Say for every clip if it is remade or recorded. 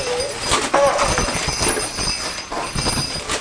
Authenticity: recorded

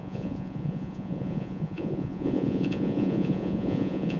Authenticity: remade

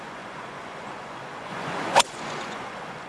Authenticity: remade